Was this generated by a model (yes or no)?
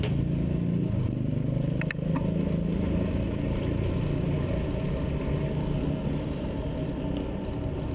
no